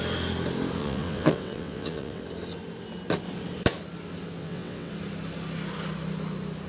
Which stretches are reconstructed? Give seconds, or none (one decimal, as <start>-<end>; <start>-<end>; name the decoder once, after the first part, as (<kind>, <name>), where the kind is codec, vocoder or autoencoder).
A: 0.8-2.2 (vocoder, WaveNeXt); 4.4-4.9